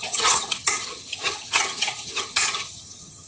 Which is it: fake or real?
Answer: fake